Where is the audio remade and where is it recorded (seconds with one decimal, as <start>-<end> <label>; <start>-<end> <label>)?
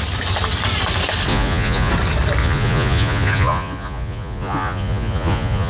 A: 0.0-1.3 recorded; 1.3-1.9 remade; 1.9-2.4 recorded; 2.4-5.7 remade